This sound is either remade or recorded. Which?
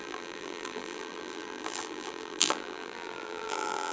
remade